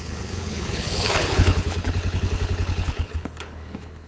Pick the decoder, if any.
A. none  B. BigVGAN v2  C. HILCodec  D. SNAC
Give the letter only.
C